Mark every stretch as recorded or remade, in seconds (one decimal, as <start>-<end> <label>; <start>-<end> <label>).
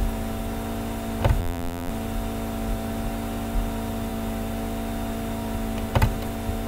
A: 0.0-1.4 recorded; 1.4-1.9 remade; 1.9-6.7 recorded